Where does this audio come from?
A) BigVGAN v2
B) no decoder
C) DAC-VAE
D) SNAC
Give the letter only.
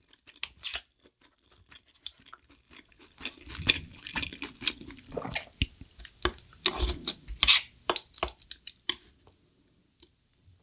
B